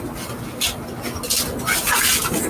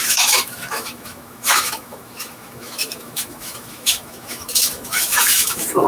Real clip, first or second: first